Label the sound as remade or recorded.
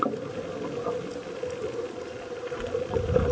recorded